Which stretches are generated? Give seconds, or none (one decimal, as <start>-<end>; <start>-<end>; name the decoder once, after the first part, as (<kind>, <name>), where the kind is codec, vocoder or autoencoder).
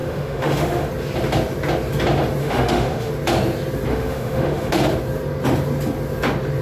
0.0-0.9 (autoencoder, DAC-VAE); 2.4-3.1; 3.9-4.8